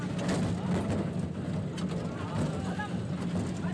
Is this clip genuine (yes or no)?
yes